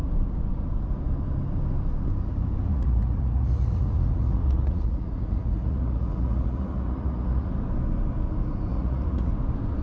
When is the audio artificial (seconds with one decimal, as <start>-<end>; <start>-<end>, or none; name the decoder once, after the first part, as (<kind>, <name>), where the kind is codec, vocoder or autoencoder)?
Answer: 2.7-7.5 (vocoder, Vocos); 8.7-9.3

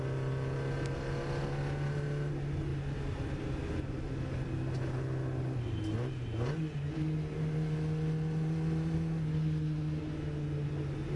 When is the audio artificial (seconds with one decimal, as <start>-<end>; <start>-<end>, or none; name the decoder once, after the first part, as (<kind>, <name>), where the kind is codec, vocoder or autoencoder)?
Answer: none

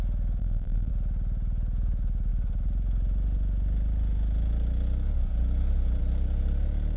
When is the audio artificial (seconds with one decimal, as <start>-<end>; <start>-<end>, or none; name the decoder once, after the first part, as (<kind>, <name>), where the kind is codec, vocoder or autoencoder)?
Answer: 0.4-0.9 (vocoder, BigVGAN v2)

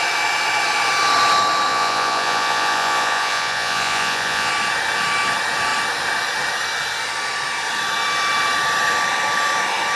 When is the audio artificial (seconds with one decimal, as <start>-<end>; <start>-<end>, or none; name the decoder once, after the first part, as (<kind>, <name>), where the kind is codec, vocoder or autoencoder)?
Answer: 1.7-4.5 (vocoder, Vocos)

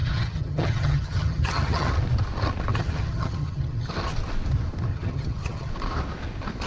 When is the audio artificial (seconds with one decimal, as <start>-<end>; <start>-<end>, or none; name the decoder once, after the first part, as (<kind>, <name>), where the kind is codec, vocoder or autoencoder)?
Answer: 0.0-1.9 (vocoder, HiFi-GAN); 2.7-3.9; 4.9-5.7

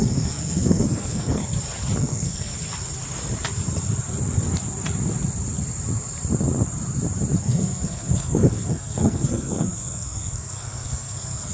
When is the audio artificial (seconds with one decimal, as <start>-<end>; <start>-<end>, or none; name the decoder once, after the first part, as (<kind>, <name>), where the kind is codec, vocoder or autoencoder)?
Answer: 0.0-1.4 (codec, SNAC); 2.0-2.5; 7.4-11.5